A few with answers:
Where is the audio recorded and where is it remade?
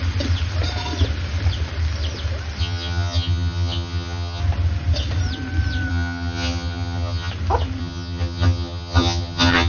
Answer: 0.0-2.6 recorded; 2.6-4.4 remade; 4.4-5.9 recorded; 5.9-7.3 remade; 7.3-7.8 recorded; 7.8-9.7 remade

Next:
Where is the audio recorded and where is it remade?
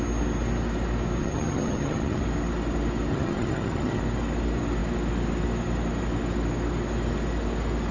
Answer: 0.0-1.2 recorded; 1.2-2.2 remade; 2.2-3.1 recorded; 3.1-4.0 remade; 4.0-7.9 recorded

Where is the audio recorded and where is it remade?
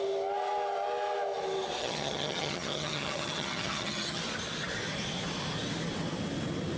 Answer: 0.0-1.8 recorded; 1.8-4.2 remade; 4.2-6.8 recorded